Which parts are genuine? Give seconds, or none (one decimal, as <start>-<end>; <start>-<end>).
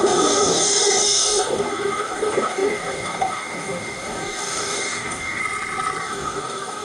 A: 5.4-6.0